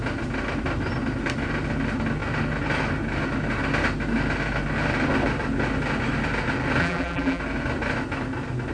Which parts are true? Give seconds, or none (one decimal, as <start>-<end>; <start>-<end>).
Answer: 0.0-6.8; 7.4-8.7